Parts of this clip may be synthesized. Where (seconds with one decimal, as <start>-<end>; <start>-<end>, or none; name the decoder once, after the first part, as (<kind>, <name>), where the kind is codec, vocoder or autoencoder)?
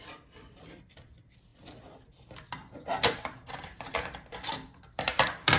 0.0-1.5 (vocoder, BigVGAN v2); 3.5-5.6